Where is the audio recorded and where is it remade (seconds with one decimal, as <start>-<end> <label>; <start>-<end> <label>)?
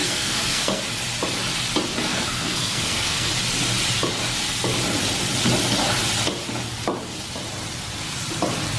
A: 0.0-0.8 remade; 0.8-2.1 recorded; 2.1-3.3 remade; 3.3-8.8 recorded